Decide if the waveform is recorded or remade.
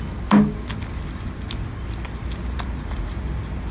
recorded